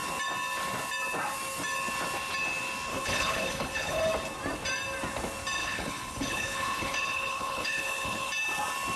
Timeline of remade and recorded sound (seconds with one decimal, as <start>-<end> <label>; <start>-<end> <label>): 0.0-2.9 recorded; 2.9-4.0 remade; 4.0-5.6 recorded; 5.6-8.3 remade; 8.3-9.0 recorded